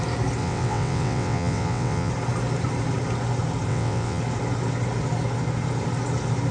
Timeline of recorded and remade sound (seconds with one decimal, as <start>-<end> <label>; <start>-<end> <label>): 0.0-0.4 recorded; 0.4-2.1 remade; 2.1-3.7 recorded; 3.7-4.2 remade; 4.2-6.5 recorded